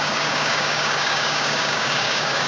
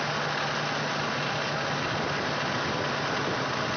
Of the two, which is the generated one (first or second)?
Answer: first